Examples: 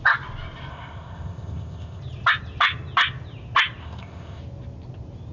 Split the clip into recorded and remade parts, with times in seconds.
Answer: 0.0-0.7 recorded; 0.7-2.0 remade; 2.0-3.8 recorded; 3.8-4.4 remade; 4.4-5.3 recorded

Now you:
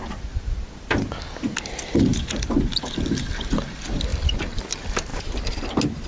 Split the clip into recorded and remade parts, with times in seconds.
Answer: 0.0-6.1 recorded